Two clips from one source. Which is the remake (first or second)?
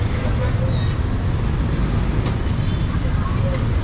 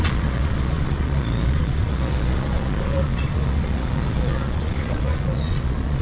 second